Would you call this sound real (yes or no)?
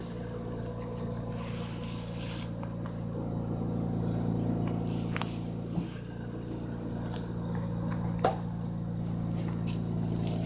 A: yes